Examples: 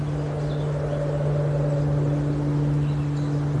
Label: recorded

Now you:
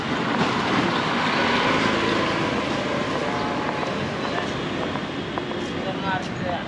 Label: recorded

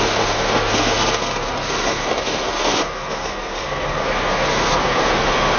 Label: remade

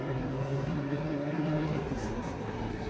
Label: remade